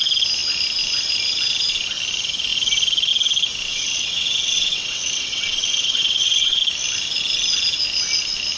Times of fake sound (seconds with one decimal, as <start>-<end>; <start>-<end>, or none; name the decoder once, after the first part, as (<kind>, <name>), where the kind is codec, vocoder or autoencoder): 3.7-6.6 (vocoder, WaveNeXt)